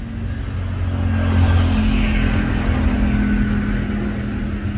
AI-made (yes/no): no